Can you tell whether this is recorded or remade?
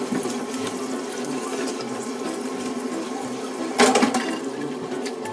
remade